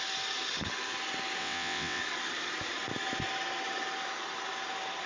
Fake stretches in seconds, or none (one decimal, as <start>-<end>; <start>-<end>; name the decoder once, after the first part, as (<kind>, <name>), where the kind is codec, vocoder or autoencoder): 1.4-2.0 (vocoder, WaveNeXt)